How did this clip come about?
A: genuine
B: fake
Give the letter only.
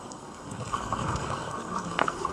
B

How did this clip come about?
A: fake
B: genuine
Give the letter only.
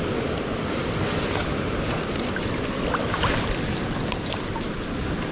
B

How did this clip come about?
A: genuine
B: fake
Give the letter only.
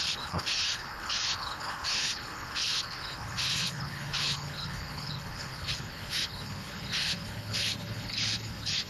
B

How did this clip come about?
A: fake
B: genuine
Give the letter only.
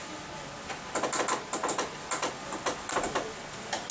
B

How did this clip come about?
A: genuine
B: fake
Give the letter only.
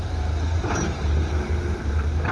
B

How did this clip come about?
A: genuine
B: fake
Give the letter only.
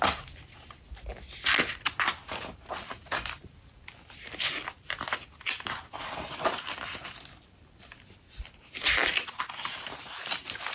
A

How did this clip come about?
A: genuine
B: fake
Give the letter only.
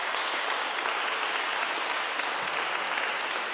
A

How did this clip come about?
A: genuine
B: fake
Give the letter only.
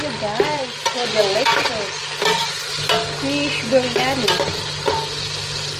A